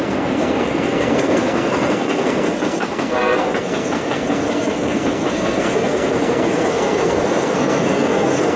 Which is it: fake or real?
fake